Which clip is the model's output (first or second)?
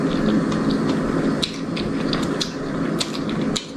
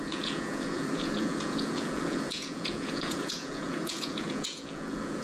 second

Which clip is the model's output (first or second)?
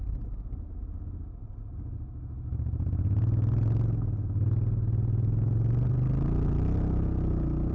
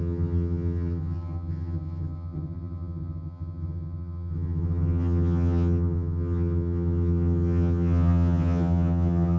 second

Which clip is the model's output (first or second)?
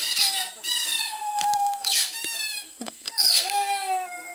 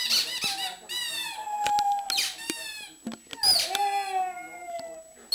first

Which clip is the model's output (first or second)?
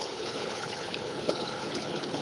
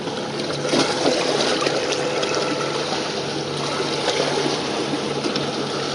first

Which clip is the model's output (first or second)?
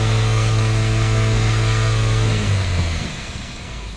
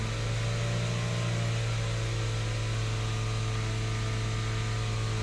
first